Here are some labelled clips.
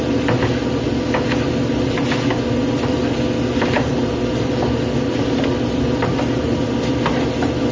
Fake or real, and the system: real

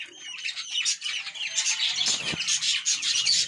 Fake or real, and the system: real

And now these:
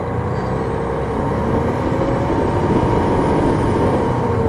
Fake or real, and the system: real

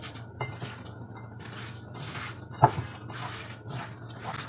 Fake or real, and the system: real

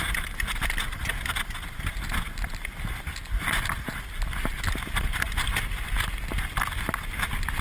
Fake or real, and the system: real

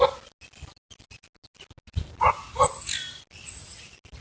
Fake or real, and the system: real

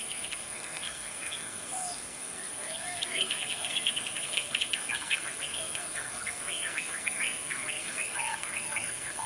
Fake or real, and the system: fake, codec, SNAC